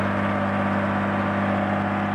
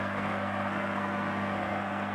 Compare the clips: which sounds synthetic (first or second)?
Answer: second